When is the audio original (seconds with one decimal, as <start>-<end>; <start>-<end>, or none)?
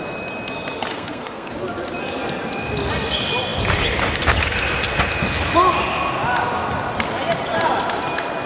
0.0-0.9; 1.5-8.5